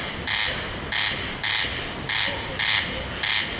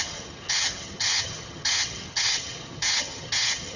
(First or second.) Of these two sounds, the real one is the first